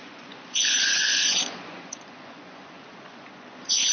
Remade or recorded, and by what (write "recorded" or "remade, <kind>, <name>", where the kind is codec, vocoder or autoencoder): remade, vocoder, Vocos